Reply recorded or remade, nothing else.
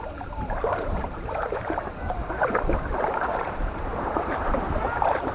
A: remade